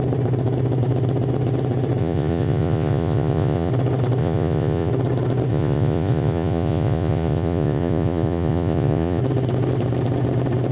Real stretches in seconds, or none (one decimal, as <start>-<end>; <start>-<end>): 0.0-2.0; 3.7-4.2; 4.9-5.5; 9.2-10.7